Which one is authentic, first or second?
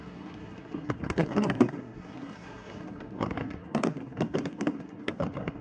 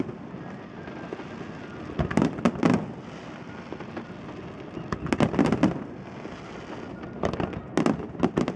second